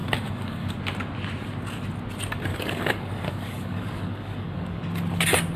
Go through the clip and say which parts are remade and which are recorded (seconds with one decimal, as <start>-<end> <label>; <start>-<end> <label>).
0.0-0.7 remade; 0.7-2.5 recorded; 2.5-4.8 remade; 4.8-5.6 recorded